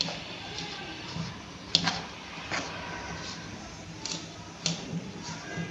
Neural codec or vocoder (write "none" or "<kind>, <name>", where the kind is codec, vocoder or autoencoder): none